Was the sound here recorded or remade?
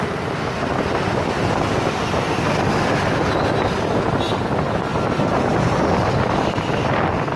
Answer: recorded